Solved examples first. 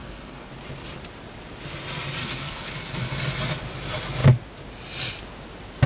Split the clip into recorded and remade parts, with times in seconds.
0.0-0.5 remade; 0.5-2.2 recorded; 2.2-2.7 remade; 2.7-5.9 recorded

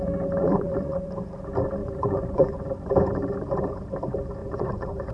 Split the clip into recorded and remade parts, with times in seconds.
0.0-0.4 recorded; 0.4-1.1 remade; 1.1-1.8 recorded; 1.8-2.7 remade; 2.7-4.4 recorded; 4.4-5.1 remade

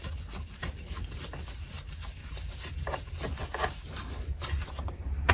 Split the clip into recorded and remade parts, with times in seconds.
0.0-2.2 recorded; 2.2-3.1 remade; 3.1-3.6 recorded; 3.6-5.3 remade

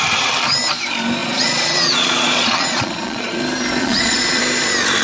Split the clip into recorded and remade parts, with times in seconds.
0.0-1.2 recorded; 1.2-3.4 remade; 3.4-3.8 recorded; 3.8-4.4 remade; 4.4-5.0 recorded

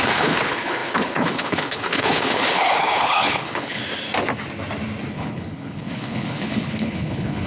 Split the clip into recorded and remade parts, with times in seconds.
0.0-3.8 remade; 3.8-5.1 recorded; 5.1-7.5 remade

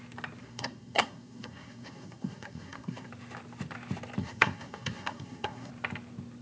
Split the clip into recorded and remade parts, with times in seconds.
0.0-0.4 recorded; 0.4-3.1 remade; 3.1-4.2 recorded; 4.2-5.7 remade; 5.7-6.4 recorded